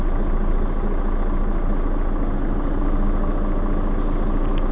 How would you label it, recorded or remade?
recorded